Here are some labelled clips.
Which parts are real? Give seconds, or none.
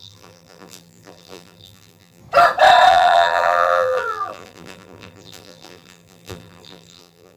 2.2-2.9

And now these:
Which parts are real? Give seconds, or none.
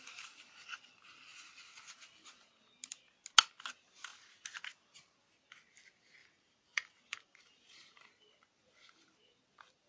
0.0-6.2; 8.0-9.9